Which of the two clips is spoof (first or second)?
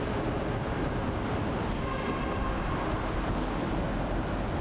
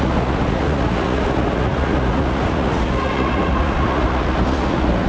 second